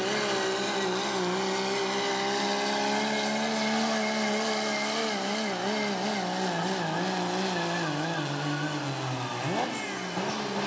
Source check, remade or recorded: recorded